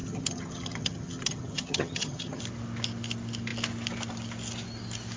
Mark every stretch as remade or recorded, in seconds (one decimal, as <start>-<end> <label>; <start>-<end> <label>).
0.0-2.4 remade; 2.4-5.2 recorded